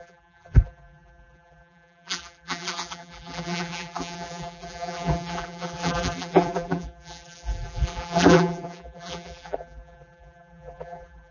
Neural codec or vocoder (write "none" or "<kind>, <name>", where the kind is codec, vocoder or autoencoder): vocoder, BigVGAN v2